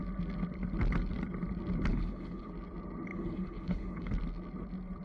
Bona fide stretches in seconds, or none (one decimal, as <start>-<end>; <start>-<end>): 0.0-1.9; 2.5-3.1; 4.1-5.0